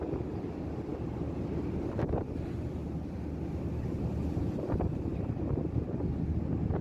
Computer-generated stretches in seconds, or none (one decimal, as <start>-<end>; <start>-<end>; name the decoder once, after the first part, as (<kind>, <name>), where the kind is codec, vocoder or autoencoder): none